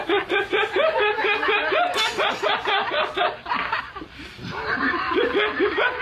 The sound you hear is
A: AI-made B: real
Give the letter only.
B